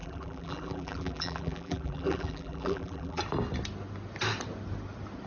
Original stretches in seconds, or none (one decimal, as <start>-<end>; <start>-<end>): 3.2-5.3